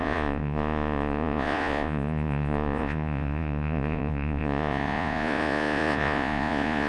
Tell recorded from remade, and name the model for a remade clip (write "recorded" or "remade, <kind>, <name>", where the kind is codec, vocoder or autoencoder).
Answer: remade, vocoder, Vocos